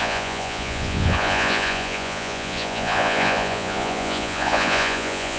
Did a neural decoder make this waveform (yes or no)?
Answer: yes